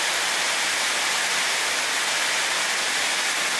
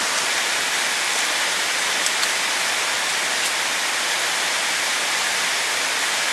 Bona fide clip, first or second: first